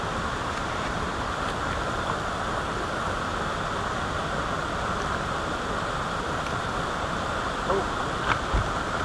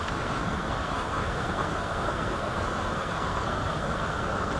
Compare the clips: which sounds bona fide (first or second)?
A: first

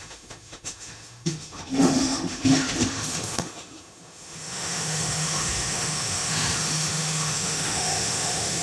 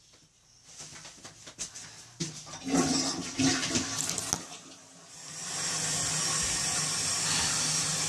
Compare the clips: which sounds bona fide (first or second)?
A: second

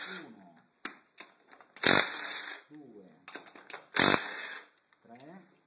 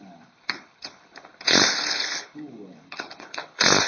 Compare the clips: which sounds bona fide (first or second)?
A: first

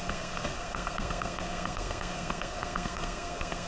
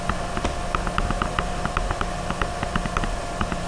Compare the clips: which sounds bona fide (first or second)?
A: second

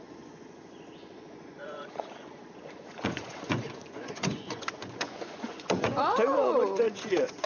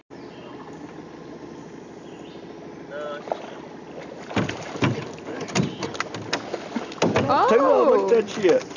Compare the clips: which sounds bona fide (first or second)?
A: second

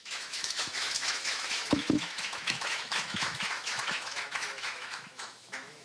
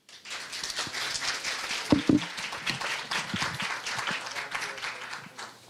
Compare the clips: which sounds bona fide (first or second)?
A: second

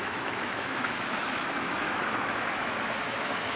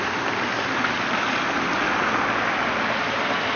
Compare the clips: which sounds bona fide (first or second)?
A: second